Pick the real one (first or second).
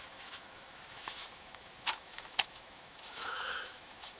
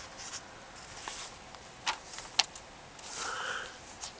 second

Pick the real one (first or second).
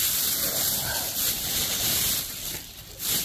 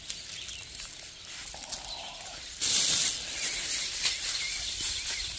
second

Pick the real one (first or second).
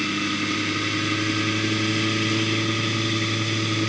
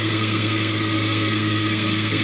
first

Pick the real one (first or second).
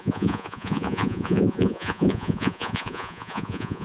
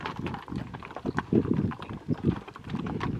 second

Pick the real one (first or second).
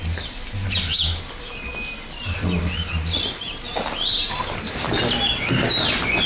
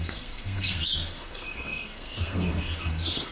first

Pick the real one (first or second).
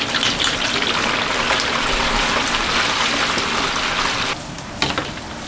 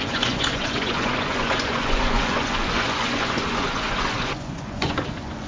first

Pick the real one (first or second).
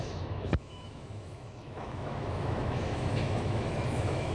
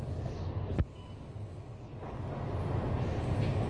second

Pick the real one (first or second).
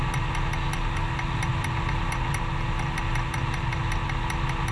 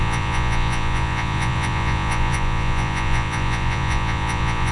first